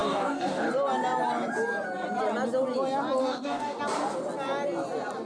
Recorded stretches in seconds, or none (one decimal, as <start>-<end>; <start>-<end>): 0.7-3.2; 3.8-5.3